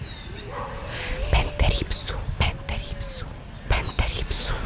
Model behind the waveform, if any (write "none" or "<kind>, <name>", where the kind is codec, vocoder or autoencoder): none